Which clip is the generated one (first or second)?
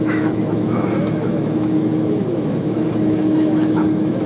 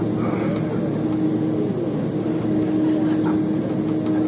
first